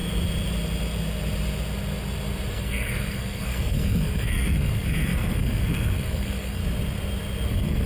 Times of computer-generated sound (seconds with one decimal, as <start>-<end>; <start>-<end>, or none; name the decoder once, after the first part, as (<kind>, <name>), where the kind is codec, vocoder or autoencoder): 2.5-6.6 (codec, SNAC); 7.5-7.9